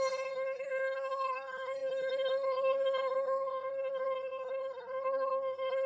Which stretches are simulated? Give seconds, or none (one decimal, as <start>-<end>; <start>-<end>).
0.0-5.9